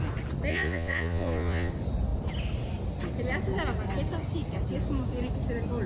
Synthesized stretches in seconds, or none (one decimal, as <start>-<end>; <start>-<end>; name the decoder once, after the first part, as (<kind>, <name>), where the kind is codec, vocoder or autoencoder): 0.5-1.7 (vocoder, Vocos)